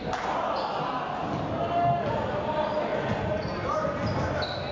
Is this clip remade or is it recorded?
recorded